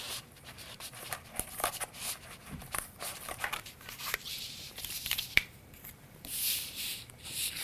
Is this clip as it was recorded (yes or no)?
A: no